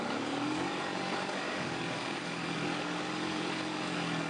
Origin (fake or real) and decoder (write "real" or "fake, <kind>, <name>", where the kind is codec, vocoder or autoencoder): fake, codec, DAC